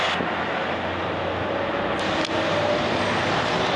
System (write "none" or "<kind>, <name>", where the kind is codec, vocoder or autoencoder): none